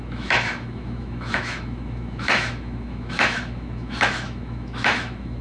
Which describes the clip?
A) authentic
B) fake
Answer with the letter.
B